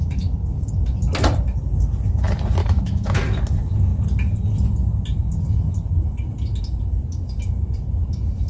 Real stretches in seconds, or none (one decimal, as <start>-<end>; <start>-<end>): 0.7-2.6; 3.4-8.5